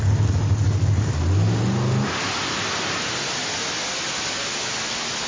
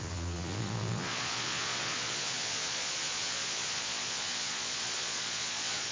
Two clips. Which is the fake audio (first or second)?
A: second